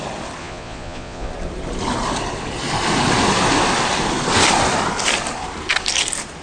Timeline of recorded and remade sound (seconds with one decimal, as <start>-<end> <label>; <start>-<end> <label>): 0.0-0.4 recorded; 0.4-1.3 remade; 1.3-6.4 recorded